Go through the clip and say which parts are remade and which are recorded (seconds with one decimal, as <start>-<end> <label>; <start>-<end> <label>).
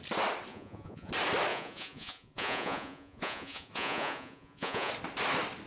0.0-0.5 recorded; 0.5-1.1 remade; 1.1-1.5 recorded; 1.5-4.9 remade; 4.9-5.7 recorded